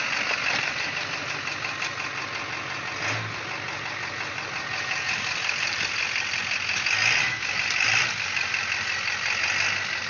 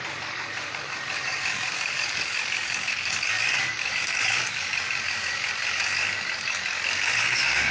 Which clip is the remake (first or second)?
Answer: second